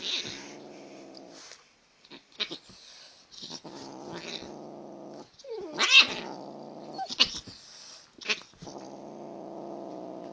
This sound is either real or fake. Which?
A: real